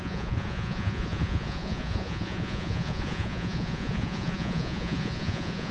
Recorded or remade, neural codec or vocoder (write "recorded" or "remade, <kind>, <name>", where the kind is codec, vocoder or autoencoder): remade, vocoder, Vocos